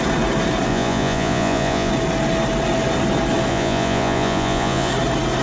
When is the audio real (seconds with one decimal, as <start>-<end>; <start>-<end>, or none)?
0.0-0.7; 1.9-3.5; 4.9-5.4